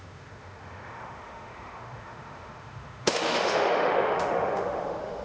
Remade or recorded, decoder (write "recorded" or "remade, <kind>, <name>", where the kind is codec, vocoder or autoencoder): remade, autoencoder, DAC-VAE